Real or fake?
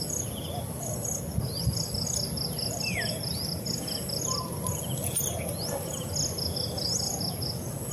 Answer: real